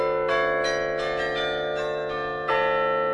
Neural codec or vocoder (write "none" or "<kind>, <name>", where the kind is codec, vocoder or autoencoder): none